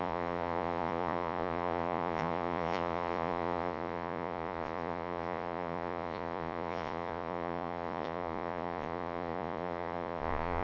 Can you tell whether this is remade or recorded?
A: remade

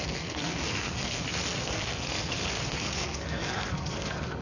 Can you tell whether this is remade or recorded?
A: remade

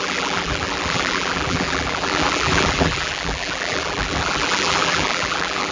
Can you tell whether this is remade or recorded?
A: remade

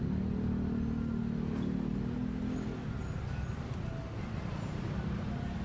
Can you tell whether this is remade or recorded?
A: recorded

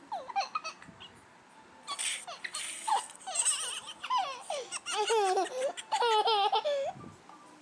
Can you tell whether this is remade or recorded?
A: recorded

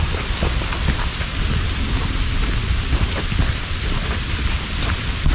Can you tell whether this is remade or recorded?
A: recorded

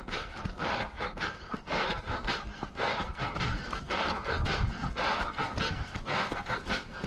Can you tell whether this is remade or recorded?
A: remade